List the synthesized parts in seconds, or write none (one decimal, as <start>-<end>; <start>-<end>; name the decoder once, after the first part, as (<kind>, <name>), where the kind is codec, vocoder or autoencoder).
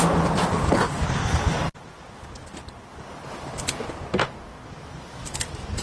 none